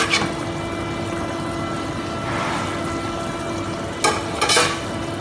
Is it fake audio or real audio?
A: real